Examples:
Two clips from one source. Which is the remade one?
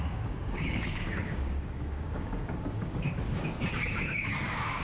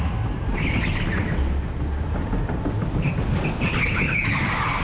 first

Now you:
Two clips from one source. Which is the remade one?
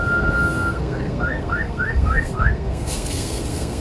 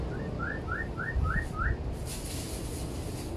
first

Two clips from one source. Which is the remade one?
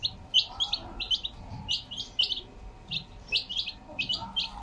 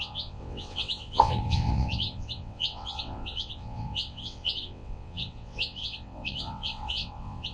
second